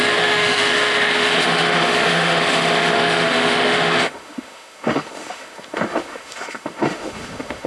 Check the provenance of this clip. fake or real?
fake